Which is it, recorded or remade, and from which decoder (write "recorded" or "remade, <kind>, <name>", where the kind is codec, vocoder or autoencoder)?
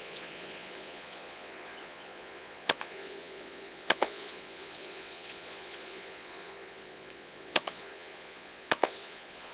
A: remade, vocoder, Vocos